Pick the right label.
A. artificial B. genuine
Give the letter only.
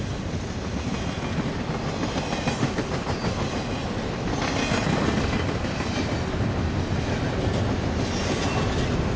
B